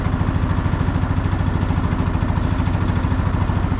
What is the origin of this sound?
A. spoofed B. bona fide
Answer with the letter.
B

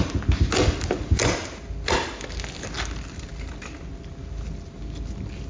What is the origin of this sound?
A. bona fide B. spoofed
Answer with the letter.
A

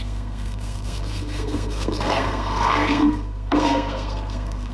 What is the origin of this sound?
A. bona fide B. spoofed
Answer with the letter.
B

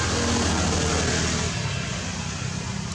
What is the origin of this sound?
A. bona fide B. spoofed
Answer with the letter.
A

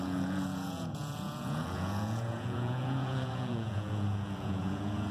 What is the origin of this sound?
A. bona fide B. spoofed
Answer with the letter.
B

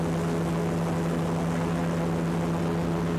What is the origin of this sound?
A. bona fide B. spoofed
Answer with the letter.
A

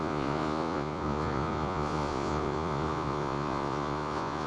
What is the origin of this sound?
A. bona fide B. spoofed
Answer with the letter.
B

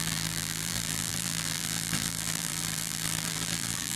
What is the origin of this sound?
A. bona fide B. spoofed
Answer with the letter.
B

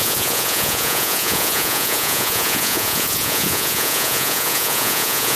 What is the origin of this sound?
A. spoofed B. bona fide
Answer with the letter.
A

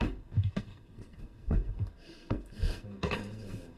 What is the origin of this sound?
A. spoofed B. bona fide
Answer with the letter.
A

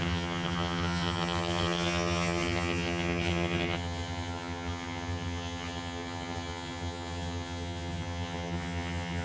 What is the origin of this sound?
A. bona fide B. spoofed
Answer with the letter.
B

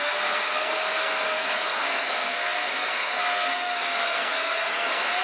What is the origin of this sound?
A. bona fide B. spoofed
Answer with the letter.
B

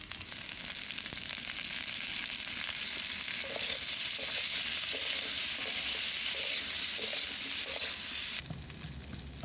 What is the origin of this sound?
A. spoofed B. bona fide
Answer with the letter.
B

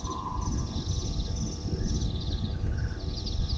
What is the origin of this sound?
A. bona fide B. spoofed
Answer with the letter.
A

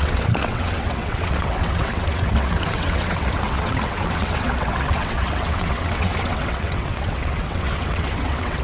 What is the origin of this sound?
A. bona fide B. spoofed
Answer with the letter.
B